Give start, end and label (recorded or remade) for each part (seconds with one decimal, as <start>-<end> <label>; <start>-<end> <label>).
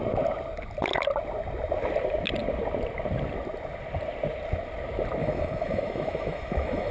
0.0-5.2 recorded; 5.2-6.9 remade